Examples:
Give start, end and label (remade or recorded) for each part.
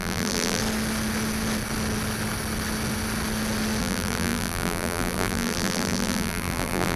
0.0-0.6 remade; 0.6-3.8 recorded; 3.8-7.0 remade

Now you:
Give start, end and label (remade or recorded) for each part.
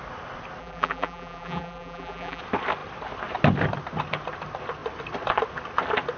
0.0-0.6 recorded; 0.6-2.4 remade; 2.4-6.2 recorded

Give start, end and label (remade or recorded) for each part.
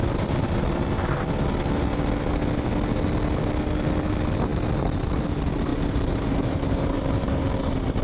0.0-5.7 recorded; 5.7-8.0 remade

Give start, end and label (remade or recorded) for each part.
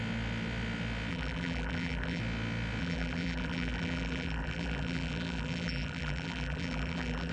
0.0-1.1 recorded; 1.1-2.2 remade; 2.2-2.8 recorded; 2.8-7.3 remade